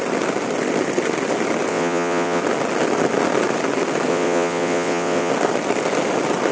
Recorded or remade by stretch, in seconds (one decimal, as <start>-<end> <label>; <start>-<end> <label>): 0.0-1.7 recorded; 1.7-2.4 remade; 2.4-4.1 recorded; 4.1-5.3 remade; 5.3-6.5 recorded